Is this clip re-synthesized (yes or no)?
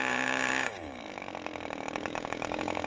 yes